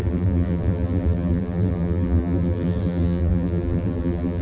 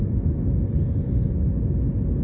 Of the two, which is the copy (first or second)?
first